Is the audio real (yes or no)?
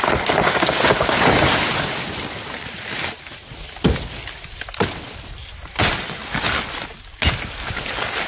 yes